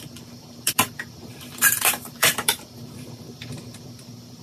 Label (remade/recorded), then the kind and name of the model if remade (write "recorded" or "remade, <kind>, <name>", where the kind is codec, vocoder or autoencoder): remade, vocoder, BigVGAN v2